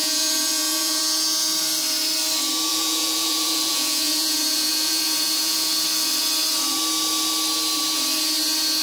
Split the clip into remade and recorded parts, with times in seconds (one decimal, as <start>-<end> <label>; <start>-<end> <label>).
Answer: 0.0-1.0 remade; 1.0-2.7 recorded; 2.7-5.7 remade; 5.7-8.8 recorded